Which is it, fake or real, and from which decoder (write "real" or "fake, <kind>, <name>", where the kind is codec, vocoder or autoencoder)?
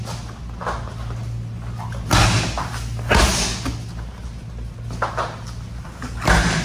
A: real